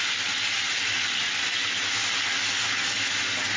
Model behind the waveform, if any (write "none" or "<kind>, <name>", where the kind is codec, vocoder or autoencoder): none